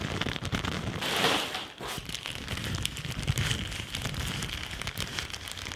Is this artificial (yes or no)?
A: no